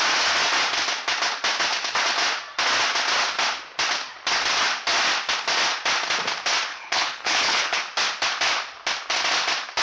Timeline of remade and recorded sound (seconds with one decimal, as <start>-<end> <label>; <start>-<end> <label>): 0.0-6.7 recorded; 6.7-7.8 remade; 7.8-9.8 recorded